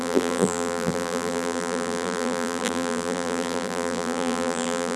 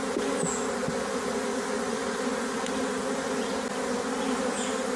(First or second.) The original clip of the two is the second